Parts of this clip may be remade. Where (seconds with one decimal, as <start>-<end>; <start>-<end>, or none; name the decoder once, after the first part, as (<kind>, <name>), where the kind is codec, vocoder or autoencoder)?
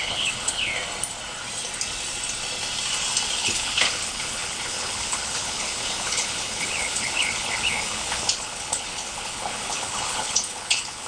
0.0-0.7 (codec, HILCodec); 3.4-11.1